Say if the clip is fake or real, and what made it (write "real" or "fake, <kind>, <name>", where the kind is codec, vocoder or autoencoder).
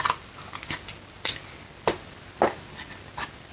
real